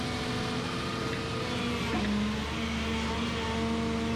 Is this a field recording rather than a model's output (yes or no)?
yes